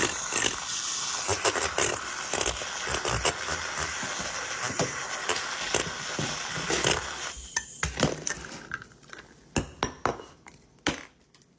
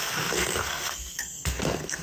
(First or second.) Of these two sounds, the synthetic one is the second